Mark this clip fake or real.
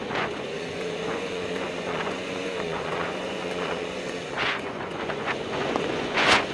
fake